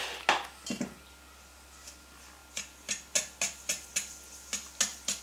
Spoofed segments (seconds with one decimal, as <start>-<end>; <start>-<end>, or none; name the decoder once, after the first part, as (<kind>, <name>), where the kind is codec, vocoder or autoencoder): none